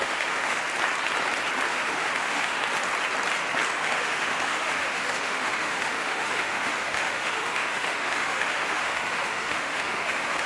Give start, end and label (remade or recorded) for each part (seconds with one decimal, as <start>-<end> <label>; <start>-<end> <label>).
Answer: 0.0-0.6 remade; 0.6-1.7 recorded; 1.7-2.6 remade; 2.6-3.8 recorded; 3.8-10.5 remade